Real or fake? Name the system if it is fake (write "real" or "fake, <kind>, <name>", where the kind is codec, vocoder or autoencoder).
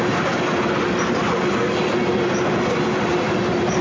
real